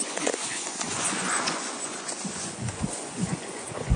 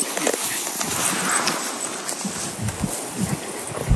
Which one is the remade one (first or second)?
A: first